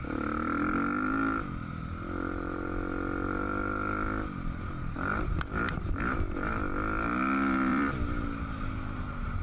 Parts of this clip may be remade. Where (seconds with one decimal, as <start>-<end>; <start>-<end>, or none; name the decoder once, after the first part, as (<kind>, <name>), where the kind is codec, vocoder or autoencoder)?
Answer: 7.7-8.4 (vocoder, BigVGAN v2)

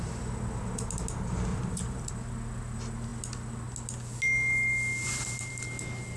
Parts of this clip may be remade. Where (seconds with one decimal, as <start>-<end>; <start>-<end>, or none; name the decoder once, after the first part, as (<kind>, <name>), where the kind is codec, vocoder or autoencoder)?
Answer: 1.5-2.1 (vocoder, BigVGAN v2)

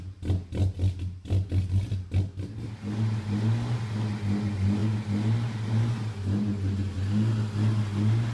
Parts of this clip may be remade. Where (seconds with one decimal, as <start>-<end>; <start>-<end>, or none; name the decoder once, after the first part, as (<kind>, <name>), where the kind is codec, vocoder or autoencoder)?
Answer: none